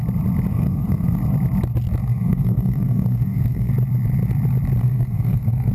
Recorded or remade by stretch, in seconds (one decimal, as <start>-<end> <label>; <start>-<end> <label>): 0.0-0.5 recorded; 0.5-1.2 remade; 1.2-2.0 recorded; 2.0-3.7 remade; 3.7-4.8 recorded; 4.8-5.7 remade